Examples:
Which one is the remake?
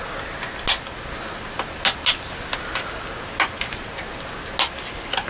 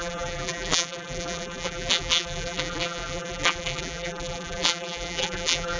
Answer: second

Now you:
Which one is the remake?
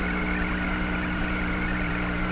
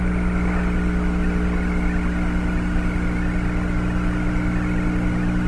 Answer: first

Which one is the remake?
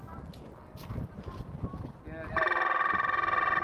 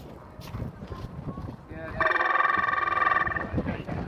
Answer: second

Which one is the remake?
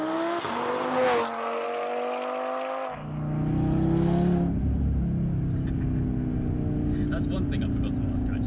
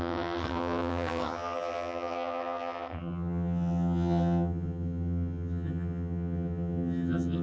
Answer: second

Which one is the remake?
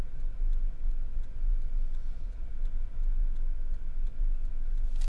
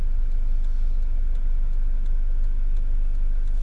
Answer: first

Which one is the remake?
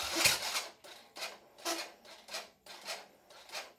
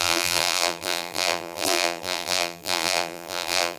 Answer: second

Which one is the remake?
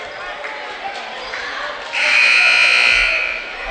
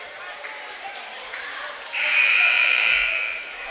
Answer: second